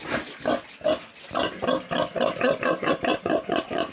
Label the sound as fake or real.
real